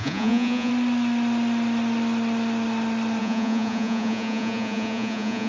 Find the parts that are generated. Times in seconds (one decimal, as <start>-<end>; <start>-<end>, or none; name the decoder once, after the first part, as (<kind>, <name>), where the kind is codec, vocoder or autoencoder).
0.0-0.7 (vocoder, Vocos); 3.2-5.5